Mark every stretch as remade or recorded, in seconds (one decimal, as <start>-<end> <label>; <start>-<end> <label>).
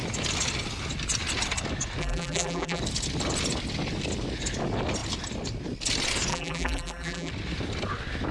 0.0-2.0 recorded; 2.0-2.8 remade; 2.8-6.3 recorded; 6.3-7.3 remade; 7.3-8.3 recorded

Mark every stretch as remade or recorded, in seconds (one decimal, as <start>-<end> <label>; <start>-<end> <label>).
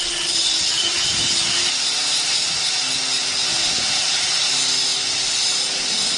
0.0-6.2 recorded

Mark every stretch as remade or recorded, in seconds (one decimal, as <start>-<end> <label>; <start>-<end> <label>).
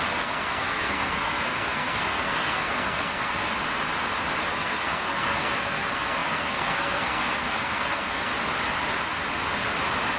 0.0-3.4 remade; 3.4-4.5 recorded; 4.5-8.3 remade; 8.3-10.2 recorded